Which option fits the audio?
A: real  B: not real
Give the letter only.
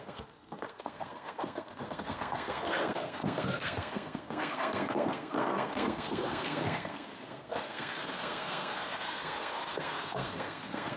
B